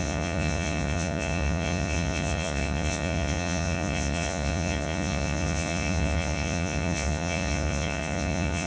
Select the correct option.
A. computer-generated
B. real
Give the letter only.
A